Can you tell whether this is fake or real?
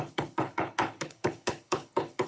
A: fake